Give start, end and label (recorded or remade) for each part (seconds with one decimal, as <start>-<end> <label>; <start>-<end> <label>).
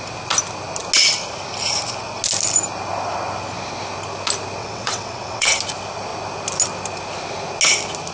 0.0-4.6 recorded; 4.6-5.6 remade; 5.6-8.1 recorded